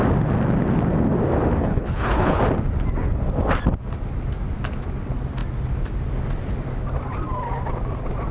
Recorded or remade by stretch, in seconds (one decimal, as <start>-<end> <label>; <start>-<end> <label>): 0.0-1.6 recorded; 1.6-2.4 remade; 2.4-8.3 recorded